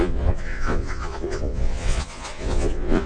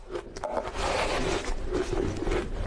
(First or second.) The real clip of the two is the second